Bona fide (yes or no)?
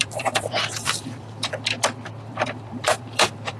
no